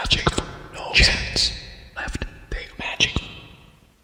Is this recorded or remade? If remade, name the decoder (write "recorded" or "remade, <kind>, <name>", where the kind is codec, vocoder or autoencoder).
remade, vocoder, Vocos